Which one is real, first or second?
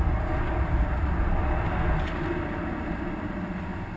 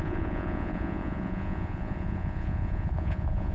first